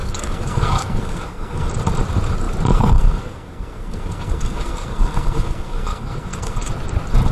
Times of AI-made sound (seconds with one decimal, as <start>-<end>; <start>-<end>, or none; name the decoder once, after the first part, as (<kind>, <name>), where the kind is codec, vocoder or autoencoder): 0.0-1.7 (codec, SNAC); 2.7-6.7